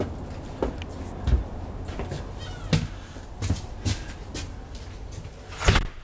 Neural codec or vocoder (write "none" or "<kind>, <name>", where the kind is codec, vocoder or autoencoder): none